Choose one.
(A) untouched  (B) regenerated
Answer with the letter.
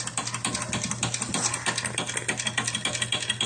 A